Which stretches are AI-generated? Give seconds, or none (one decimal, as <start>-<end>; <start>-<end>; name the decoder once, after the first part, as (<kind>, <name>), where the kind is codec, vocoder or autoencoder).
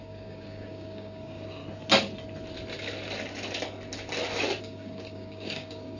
0.0-1.6 (codec, DAC); 4.6-6.0